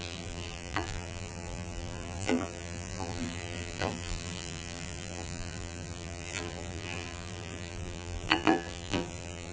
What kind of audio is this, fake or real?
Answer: fake